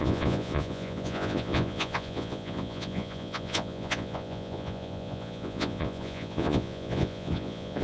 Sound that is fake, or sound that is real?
fake